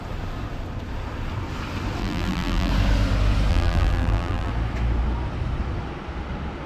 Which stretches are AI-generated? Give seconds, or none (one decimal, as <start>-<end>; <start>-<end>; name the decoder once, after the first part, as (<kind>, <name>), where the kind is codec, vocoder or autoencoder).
2.0-2.7 (vocoder, BigVGAN v2); 3.5-4.5